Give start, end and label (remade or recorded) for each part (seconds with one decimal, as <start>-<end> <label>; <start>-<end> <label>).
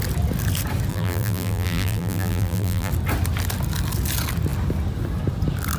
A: 0.0-0.9 recorded; 0.9-2.9 remade; 2.9-5.8 recorded